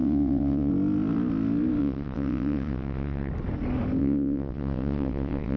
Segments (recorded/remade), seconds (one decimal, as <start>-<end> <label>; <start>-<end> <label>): 0.0-0.7 remade; 0.7-1.8 recorded; 1.8-3.3 remade; 3.3-4.0 recorded; 4.0-5.6 remade